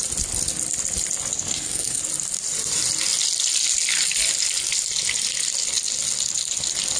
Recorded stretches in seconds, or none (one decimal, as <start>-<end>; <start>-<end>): 0.0-1.5; 2.0-7.0